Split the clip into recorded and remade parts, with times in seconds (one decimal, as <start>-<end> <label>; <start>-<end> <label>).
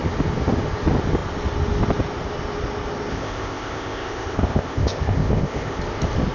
0.0-3.1 recorded; 3.1-5.8 remade; 5.8-6.3 recorded